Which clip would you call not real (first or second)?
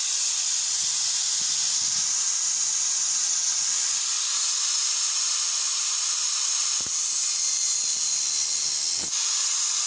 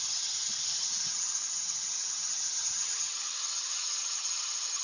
second